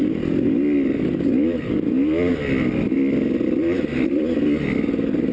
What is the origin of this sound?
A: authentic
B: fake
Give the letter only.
A